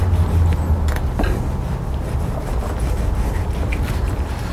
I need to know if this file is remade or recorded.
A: recorded